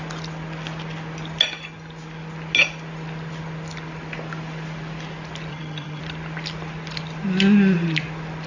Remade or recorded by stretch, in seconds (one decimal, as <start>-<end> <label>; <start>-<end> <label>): 0.0-5.5 recorded; 5.5-6.0 remade; 6.0-8.5 recorded